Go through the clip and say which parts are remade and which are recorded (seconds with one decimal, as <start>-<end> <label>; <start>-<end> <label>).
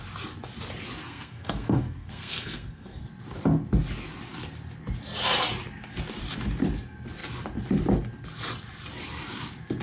0.0-1.0 recorded; 1.0-3.0 remade; 3.0-9.8 recorded